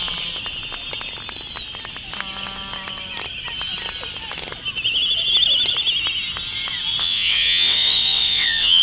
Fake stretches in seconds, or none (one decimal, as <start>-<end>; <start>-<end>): 7.0-8.8